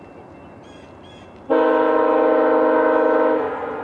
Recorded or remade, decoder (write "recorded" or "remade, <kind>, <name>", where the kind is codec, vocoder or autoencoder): recorded